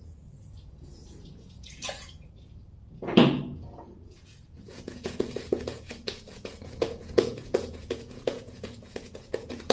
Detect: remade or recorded remade